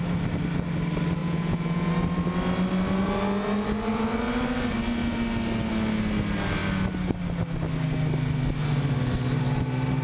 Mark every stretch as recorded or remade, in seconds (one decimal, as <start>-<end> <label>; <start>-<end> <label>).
0.0-1.2 recorded; 1.2-1.9 remade; 1.9-10.0 recorded